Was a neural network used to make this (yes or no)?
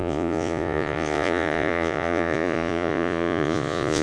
yes